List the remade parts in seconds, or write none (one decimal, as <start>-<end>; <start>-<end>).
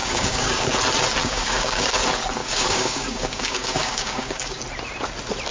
0.0-0.7; 1.2-1.9; 2.4-4.6